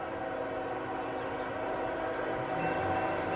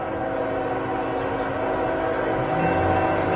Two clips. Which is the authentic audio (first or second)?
second